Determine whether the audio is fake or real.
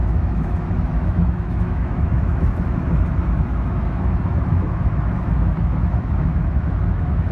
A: fake